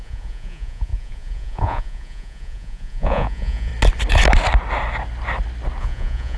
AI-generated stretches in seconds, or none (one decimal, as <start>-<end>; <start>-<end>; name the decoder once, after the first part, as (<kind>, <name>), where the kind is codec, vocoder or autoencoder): 0.0-3.7 (vocoder, Vocos); 5.8-6.4